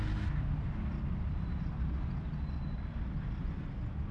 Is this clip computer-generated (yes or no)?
no